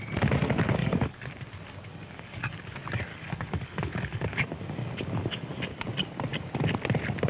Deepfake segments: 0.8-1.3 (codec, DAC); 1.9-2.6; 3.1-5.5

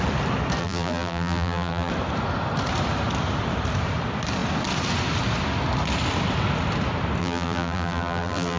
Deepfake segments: 0.6-1.9 (vocoder, BigVGAN v2); 7.2-8.6

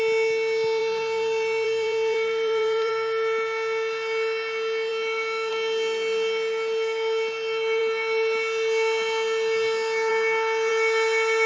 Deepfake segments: 0.8-2.9 (vocoder, BigVGAN v2)

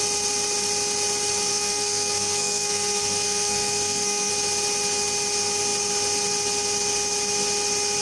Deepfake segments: 1.5-4.3 (codec, SNAC)